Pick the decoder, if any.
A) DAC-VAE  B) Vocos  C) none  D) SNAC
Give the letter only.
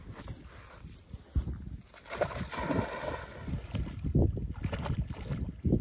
C